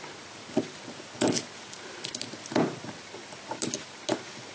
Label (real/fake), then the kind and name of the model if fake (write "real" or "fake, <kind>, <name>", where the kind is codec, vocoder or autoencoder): real